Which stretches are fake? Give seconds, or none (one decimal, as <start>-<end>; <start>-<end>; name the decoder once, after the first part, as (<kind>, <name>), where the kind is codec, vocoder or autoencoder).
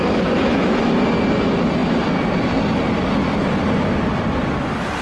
0.0-0.8 (autoencoder, DAC-VAE)